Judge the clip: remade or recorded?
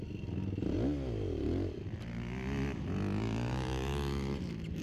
recorded